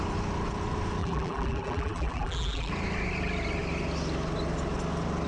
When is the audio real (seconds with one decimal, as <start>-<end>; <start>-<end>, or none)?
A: 0.0-1.0; 2.7-5.3